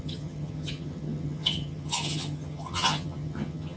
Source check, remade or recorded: remade